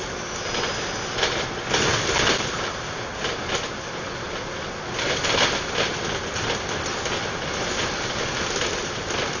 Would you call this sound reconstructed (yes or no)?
no